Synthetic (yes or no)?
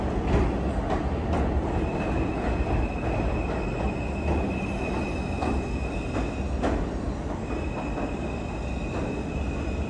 no